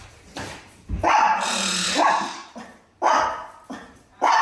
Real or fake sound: real